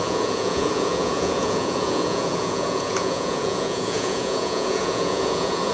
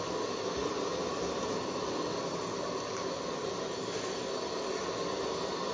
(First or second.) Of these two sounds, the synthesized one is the first